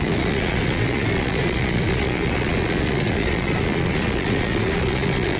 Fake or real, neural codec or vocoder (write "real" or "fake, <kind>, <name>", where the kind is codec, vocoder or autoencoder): fake, vocoder, Vocos